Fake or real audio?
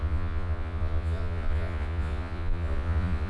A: fake